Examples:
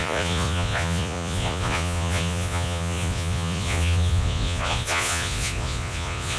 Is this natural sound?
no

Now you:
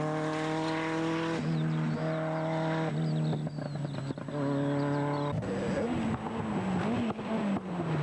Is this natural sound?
yes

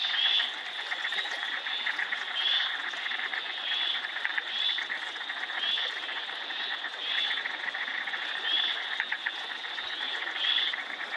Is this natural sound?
no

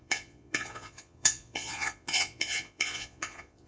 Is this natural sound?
no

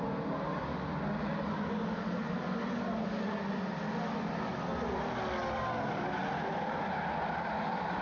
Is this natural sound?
yes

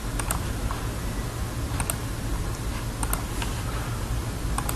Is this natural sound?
yes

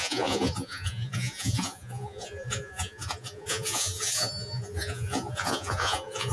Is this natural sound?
no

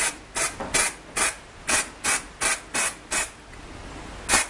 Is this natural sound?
yes